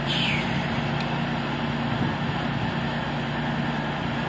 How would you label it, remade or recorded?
recorded